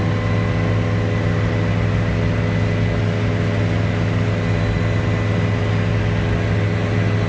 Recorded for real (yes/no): yes